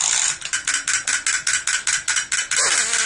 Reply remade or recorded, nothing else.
recorded